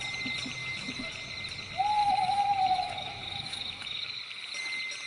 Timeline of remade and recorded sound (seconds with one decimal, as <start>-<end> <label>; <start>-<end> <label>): 0.0-0.6 recorded; 0.6-1.1 remade; 1.1-2.0 recorded; 2.0-4.2 remade; 4.2-5.1 recorded